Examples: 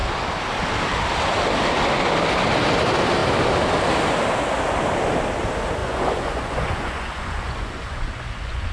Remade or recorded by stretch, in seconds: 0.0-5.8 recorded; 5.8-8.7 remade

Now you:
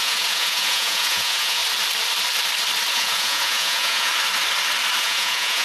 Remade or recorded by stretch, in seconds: 0.0-1.6 remade; 1.6-2.9 recorded; 2.9-4.1 remade; 4.1-5.0 recorded; 5.0-5.6 remade

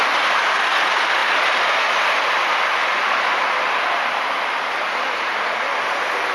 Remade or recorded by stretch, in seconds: 0.0-6.3 recorded

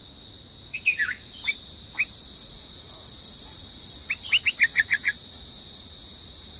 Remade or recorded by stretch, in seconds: 0.0-2.4 recorded; 2.4-4.1 remade; 4.1-4.7 recorded; 4.7-6.6 remade

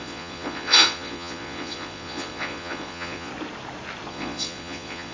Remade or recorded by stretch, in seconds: 0.0-3.3 remade; 3.3-4.1 recorded; 4.1-5.1 remade

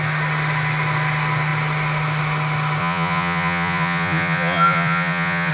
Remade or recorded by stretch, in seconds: 0.0-2.8 recorded; 2.8-5.5 remade